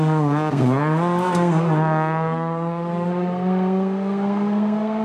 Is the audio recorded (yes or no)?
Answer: no